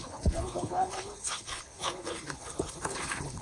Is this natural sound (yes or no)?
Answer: no